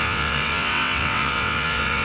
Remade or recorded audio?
remade